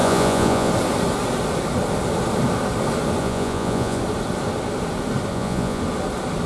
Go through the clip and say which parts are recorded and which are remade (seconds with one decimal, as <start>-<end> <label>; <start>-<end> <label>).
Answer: 0.0-0.7 remade; 0.7-3.2 recorded; 3.2-4.0 remade; 4.0-5.3 recorded; 5.3-5.8 remade; 5.8-6.5 recorded